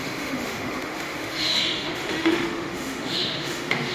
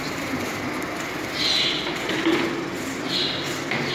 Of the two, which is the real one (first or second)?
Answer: second